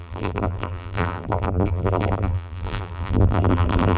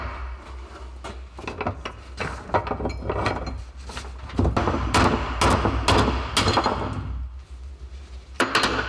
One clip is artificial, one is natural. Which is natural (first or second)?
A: second